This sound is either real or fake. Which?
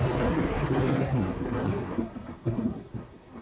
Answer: fake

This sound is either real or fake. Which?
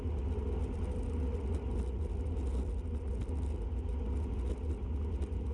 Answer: real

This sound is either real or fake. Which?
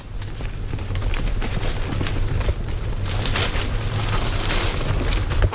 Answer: real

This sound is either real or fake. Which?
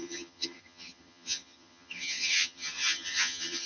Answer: fake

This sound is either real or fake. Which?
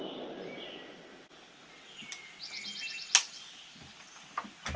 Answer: real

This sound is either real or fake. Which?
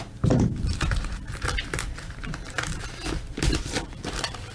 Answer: fake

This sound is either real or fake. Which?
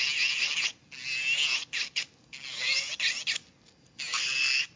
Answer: real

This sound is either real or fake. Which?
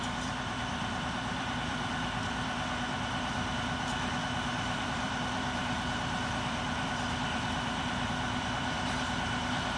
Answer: fake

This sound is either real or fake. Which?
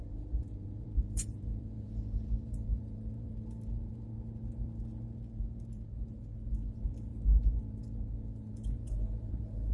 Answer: fake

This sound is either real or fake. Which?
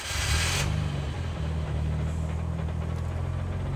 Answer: real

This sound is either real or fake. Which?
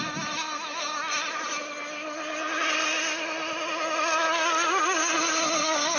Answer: real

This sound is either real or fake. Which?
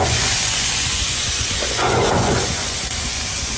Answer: fake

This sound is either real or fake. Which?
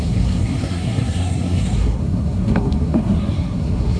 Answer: fake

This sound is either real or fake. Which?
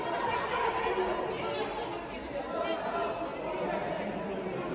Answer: real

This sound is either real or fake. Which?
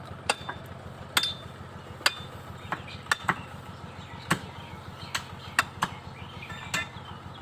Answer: real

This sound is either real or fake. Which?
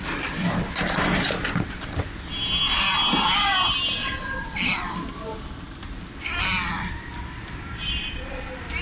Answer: real